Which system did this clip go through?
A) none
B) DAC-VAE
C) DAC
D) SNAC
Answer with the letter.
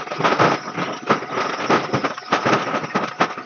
A